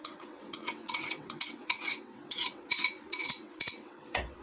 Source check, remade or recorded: remade